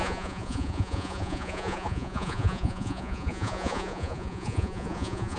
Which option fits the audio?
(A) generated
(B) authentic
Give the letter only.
A